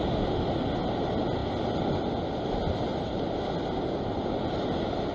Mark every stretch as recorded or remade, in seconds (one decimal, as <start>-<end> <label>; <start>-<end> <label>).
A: 0.0-2.9 recorded; 2.9-3.4 remade; 3.4-5.1 recorded

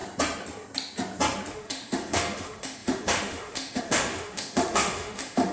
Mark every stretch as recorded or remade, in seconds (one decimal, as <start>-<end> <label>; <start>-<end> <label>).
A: 0.0-1.5 recorded; 1.5-5.5 remade